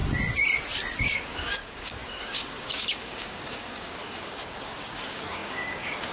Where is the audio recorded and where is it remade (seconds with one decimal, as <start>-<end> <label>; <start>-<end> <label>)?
0.0-1.0 recorded; 1.0-6.1 remade